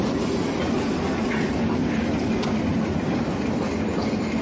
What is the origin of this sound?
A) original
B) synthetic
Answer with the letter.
A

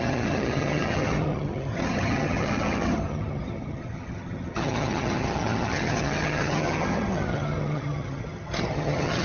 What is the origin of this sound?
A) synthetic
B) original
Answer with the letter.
A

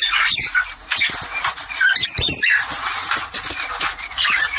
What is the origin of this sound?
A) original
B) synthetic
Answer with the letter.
A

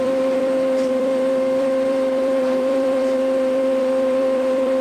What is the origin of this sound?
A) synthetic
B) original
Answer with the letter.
A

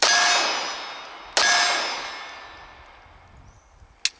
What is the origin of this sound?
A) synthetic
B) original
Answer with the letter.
B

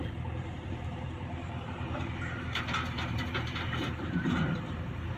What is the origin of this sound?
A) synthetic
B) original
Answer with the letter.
A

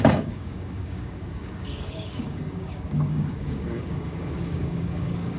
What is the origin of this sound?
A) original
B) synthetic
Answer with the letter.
B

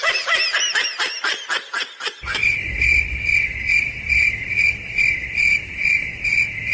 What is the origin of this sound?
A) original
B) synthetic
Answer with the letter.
A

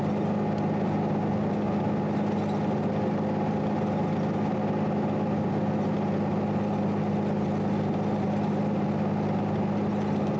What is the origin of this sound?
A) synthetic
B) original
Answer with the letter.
B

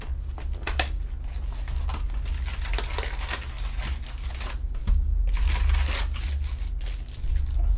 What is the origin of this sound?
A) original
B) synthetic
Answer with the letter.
A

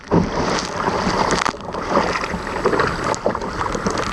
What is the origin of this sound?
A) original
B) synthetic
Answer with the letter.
A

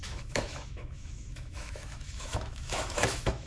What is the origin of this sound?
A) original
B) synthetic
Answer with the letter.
B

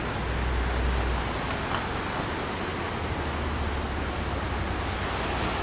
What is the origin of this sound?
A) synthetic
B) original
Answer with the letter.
B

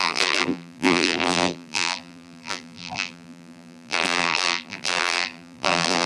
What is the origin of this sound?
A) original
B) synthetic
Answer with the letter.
B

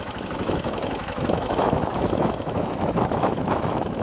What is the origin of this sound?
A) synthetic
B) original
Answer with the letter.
A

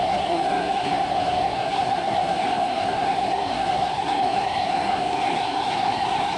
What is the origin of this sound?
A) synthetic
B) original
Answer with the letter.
A